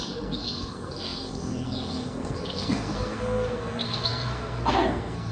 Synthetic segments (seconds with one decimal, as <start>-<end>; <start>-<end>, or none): 0.0-5.3